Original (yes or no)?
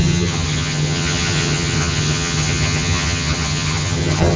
no